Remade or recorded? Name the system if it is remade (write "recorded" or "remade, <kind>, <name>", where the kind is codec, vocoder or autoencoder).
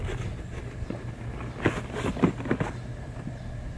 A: recorded